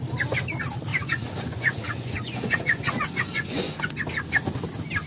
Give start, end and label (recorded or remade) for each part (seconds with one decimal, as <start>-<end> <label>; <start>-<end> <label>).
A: 0.0-0.9 recorded; 0.9-3.8 remade; 3.8-5.1 recorded